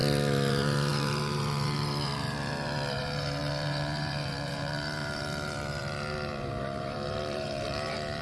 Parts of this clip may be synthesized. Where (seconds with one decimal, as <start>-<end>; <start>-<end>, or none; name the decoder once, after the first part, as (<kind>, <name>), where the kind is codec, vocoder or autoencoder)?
0.5-8.2 (vocoder, BigVGAN v2)